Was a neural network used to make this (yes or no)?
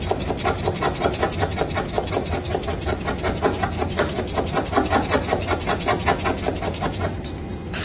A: no